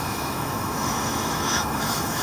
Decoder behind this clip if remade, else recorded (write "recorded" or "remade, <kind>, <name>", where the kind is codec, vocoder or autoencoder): remade, autoencoder, DAC-VAE